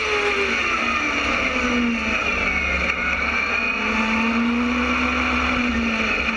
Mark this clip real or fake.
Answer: real